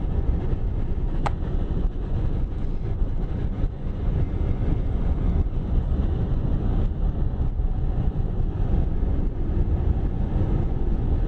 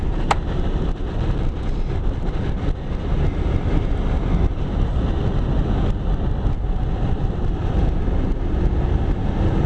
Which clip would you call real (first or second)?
second